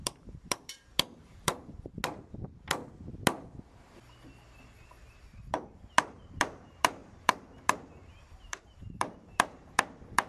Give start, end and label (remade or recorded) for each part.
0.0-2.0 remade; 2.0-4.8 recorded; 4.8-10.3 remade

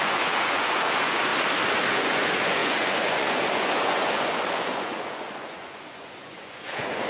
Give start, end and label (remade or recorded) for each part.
0.0-1.3 remade; 1.3-1.9 recorded; 1.9-7.1 remade

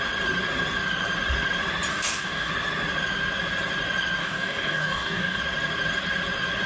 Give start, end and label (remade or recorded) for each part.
0.0-1.9 recorded; 1.9-2.5 remade; 2.5-4.2 recorded; 4.2-5.4 remade; 5.4-6.7 recorded